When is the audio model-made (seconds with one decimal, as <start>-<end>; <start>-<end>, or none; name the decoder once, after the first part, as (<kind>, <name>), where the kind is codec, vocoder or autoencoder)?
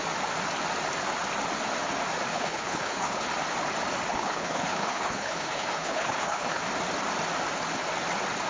2.3-3.3 (codec, HILCodec); 4.1-6.6